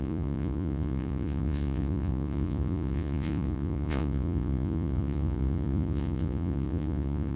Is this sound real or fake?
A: fake